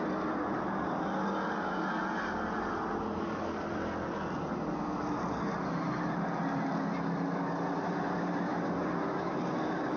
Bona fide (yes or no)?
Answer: yes